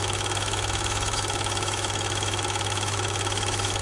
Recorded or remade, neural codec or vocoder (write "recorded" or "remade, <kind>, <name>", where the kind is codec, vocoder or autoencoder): remade, autoencoder, DAC-VAE